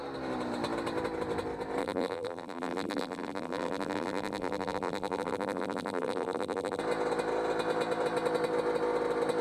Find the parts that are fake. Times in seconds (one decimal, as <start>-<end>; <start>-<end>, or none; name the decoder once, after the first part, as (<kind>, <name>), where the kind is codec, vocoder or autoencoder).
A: 1.8-6.8 (vocoder, BigVGAN v2)

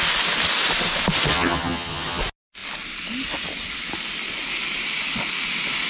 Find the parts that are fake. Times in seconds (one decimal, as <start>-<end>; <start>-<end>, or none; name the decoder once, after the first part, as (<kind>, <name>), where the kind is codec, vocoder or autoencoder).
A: 1.3-2.2 (vocoder, HiFi-GAN)

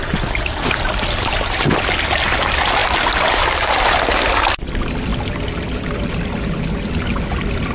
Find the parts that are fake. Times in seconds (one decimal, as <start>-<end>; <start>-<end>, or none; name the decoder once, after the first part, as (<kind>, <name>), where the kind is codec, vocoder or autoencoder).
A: none

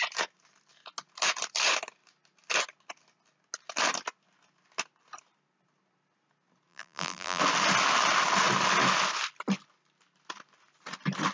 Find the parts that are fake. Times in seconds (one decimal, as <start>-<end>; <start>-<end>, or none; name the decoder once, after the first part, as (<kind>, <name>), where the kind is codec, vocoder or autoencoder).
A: 6.7-7.4 (vocoder, BigVGAN v2)

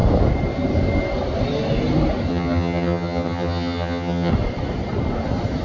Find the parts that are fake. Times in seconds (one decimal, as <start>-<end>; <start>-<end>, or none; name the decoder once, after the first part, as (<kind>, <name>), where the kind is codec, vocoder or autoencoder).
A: 2.3-4.3 (vocoder, HiFi-GAN)

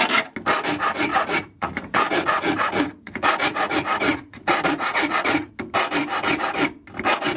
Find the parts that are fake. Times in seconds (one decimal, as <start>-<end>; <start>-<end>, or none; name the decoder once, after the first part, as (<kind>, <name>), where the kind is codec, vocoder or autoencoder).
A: 1.1-5.5 (vocoder, Vocos)

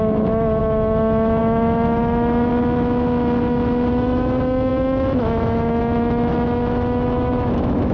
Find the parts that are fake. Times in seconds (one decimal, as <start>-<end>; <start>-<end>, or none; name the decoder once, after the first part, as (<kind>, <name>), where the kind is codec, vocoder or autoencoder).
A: 0.0-2.5 (autoencoder, DAC-VAE); 3.9-7.9